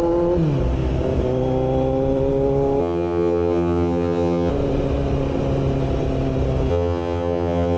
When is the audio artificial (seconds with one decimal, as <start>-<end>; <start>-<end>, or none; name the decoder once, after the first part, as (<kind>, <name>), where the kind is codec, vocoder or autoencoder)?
2.8-4.5 (vocoder, HiFi-GAN); 6.7-7.8